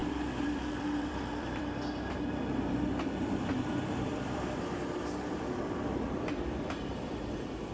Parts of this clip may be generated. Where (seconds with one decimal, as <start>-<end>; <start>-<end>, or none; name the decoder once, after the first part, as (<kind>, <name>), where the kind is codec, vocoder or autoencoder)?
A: 0.0-7.7 (vocoder, BigVGAN v2)